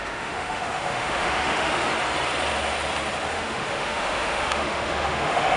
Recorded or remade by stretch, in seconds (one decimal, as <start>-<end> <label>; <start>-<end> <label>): 0.0-1.9 remade; 1.9-3.3 recorded; 3.3-5.6 remade